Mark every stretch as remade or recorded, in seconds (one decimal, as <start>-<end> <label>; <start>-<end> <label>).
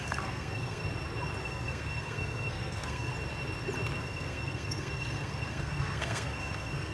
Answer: 0.0-0.8 remade; 0.8-1.4 recorded; 1.4-3.1 remade; 3.1-4.0 recorded; 4.0-6.9 remade